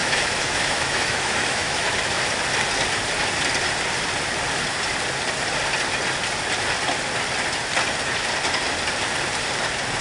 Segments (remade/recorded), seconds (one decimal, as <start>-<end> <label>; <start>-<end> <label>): 0.0-2.2 remade; 2.2-10.0 recorded